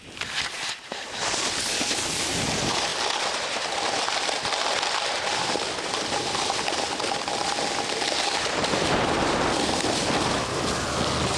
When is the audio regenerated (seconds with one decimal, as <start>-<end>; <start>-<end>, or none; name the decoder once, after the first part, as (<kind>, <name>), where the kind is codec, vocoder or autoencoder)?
none